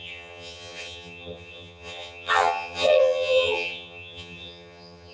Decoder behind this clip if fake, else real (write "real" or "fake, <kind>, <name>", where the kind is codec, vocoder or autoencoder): fake, vocoder, HiFi-GAN